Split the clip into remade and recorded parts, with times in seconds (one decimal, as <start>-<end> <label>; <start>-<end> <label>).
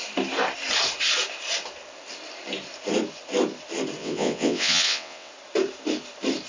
0.0-4.0 recorded; 4.0-5.3 remade; 5.3-6.5 recorded